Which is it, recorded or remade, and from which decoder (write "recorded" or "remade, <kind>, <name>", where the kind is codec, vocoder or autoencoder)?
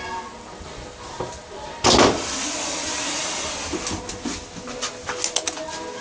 recorded